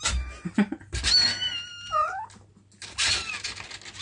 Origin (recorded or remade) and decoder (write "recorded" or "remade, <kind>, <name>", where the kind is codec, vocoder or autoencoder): recorded